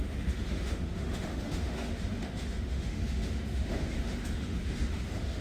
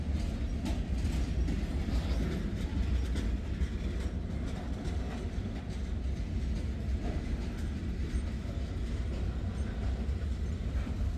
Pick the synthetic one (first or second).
first